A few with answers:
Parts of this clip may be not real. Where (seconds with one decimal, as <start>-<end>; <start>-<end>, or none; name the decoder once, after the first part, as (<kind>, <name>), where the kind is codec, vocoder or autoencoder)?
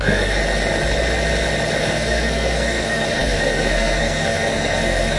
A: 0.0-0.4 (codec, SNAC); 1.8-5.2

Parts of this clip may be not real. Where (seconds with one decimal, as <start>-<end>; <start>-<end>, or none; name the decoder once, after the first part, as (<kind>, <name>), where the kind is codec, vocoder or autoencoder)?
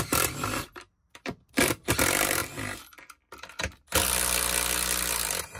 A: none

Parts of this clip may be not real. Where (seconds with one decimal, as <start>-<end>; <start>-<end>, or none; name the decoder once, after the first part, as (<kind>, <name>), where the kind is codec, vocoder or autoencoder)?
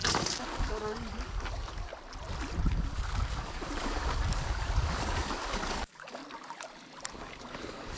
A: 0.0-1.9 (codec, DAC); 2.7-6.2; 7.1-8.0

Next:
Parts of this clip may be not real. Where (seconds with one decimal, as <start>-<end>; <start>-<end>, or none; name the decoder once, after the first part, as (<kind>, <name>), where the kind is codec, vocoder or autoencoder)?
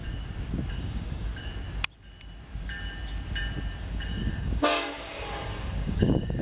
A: 0.7-1.3 (codec, DAC); 3.8-6.4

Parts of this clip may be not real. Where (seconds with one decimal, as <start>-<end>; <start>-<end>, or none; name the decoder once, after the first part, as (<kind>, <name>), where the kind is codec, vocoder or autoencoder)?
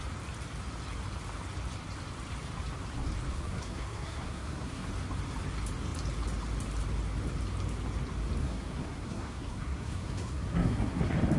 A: 3.3-4.9 (codec, SNAC); 8.4-11.0